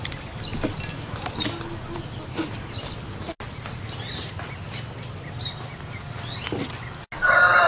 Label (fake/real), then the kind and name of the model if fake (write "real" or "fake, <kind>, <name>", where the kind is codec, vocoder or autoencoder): real